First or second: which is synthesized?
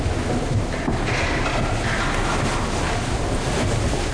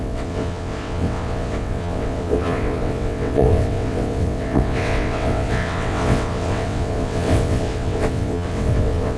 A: second